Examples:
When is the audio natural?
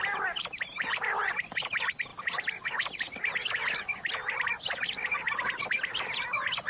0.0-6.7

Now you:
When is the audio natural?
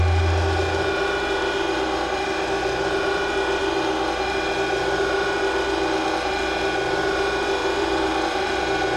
0.0-7.6; 8.6-9.0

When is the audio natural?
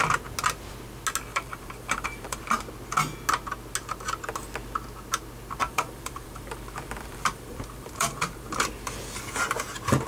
0.0-1.3; 2.4-5.6; 9.2-10.1